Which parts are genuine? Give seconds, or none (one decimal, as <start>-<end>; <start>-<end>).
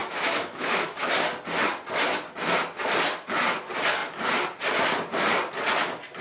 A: 1.1-6.2